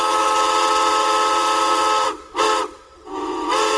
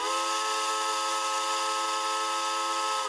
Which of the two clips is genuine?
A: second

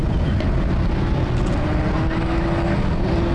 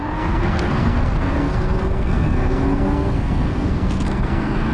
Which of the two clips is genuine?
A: first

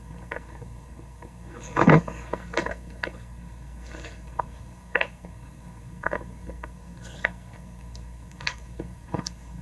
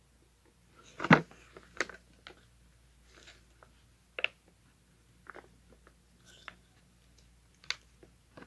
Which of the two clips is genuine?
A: second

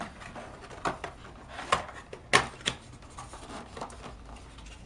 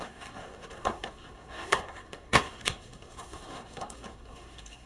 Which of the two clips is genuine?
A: first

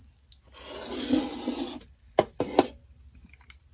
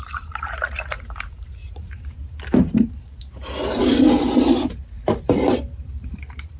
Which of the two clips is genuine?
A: first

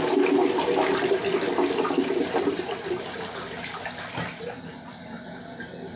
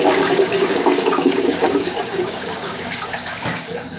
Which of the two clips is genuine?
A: first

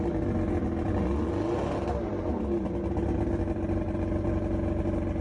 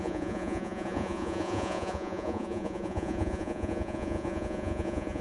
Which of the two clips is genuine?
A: first